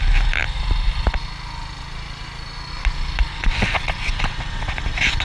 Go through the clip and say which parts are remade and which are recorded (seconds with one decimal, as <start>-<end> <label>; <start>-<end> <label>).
0.0-3.3 recorded; 3.3-4.7 remade; 4.7-5.2 recorded

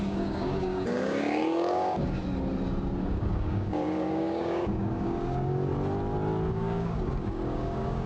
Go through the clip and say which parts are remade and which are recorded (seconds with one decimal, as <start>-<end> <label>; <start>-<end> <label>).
0.0-2.2 remade; 2.2-3.0 recorded; 3.0-5.7 remade; 5.7-6.5 recorded; 6.5-8.1 remade

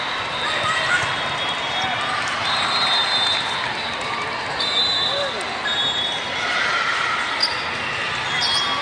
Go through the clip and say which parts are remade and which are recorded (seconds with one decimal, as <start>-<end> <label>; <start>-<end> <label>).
0.0-8.8 recorded

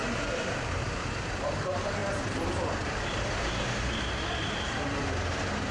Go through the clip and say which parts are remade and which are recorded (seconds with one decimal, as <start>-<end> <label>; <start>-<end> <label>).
0.0-5.7 remade

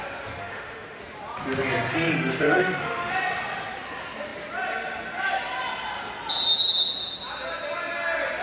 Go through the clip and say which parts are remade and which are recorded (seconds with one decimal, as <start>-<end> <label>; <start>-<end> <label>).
0.0-0.4 recorded; 0.4-1.0 remade; 1.0-1.9 recorded; 1.9-3.1 remade; 3.1-8.4 recorded